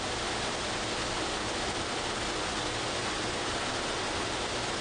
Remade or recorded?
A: recorded